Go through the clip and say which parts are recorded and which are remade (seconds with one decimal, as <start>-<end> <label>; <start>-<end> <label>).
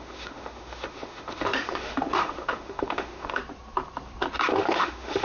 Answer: 0.0-3.4 remade; 3.4-4.5 recorded; 4.5-5.2 remade